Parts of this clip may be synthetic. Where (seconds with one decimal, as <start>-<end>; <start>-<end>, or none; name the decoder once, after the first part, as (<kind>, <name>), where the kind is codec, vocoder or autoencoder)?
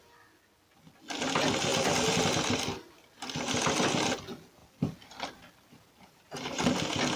5.7-6.6 (vocoder, BigVGAN v2)